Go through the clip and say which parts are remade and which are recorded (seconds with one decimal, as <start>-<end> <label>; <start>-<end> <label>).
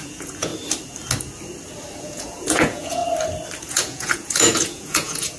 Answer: 0.0-0.5 remade; 0.5-2.0 recorded; 2.0-3.0 remade; 3.0-3.6 recorded; 3.6-5.4 remade